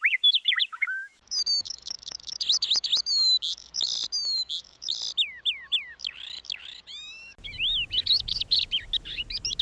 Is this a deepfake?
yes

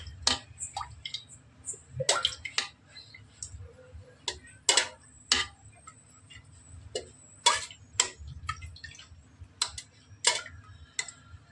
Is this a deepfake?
no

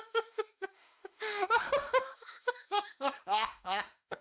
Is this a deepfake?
yes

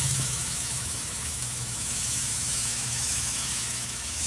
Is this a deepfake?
yes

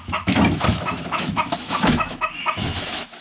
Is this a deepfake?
yes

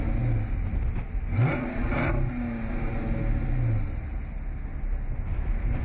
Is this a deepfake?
no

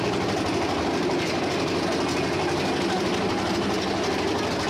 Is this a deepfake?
no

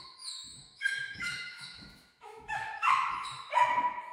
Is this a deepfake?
yes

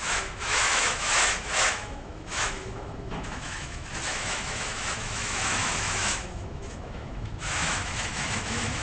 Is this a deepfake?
yes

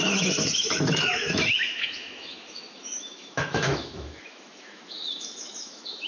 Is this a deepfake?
yes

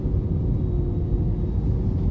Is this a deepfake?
no